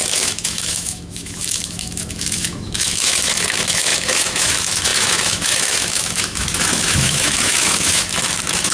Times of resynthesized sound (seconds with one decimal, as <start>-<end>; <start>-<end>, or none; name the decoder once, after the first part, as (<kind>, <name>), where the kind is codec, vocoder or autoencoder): 0.0-8.7 (autoencoder, DAC-VAE)